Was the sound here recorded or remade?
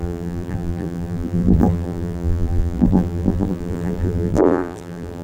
remade